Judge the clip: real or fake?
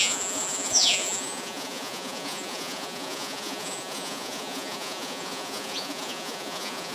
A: fake